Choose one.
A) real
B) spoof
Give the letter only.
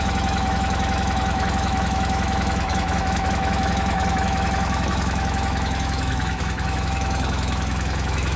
B